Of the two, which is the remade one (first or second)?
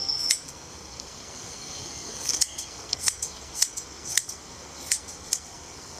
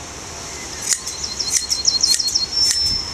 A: first